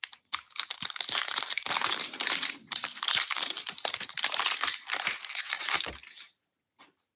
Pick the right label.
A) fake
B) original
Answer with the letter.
A